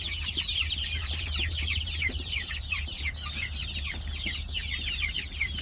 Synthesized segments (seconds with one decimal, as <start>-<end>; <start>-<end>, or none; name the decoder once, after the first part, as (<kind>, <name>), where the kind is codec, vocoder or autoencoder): 1.0-3.0 (vocoder, BigVGAN v2)